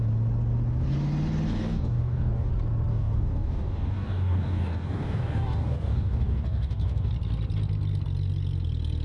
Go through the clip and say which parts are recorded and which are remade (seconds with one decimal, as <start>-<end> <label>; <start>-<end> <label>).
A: 0.0-1.5 recorded; 1.5-2.5 remade; 2.5-2.9 recorded; 2.9-7.1 remade; 7.1-9.0 recorded